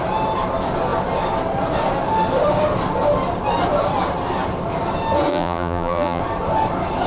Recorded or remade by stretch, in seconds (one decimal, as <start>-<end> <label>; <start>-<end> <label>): 0.0-5.3 recorded; 5.3-6.2 remade; 6.2-7.1 recorded